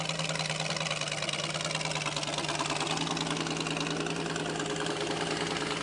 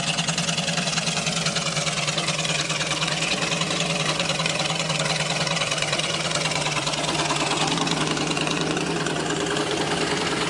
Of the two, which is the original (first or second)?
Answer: first